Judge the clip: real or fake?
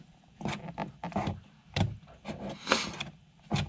real